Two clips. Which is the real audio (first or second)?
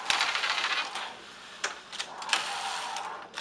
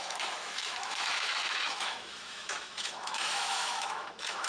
first